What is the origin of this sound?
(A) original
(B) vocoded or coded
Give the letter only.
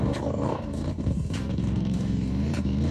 B